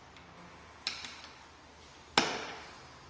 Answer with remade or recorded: recorded